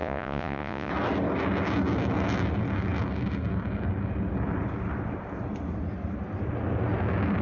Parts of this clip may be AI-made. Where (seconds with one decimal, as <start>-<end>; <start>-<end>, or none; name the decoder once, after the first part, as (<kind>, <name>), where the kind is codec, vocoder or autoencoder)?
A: 0.0-0.9 (vocoder, Vocos)